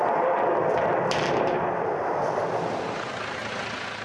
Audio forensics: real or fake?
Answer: real